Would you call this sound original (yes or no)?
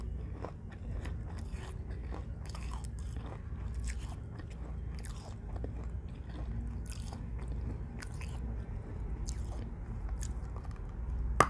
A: yes